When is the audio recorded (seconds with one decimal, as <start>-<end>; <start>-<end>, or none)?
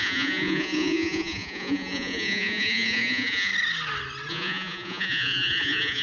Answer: 3.5-4.3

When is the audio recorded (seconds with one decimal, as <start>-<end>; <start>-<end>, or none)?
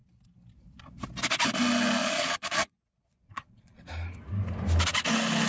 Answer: 0.0-2.0; 3.8-5.5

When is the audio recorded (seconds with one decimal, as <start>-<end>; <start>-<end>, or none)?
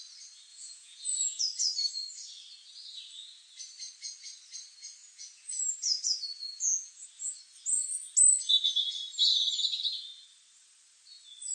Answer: 0.0-0.5; 1.4-5.0; 7.4-11.5